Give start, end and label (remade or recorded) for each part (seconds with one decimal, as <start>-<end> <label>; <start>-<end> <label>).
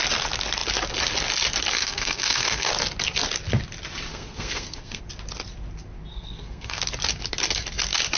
0.0-1.8 recorded; 1.8-2.7 remade; 2.7-4.1 recorded; 4.1-5.0 remade; 5.0-6.1 recorded; 6.1-6.8 remade; 6.8-8.2 recorded